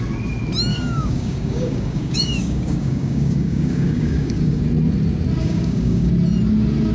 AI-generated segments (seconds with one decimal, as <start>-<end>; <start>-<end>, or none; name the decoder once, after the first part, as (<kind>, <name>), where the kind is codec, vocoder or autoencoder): 0.7-4.6 (codec, DAC); 5.4-6.1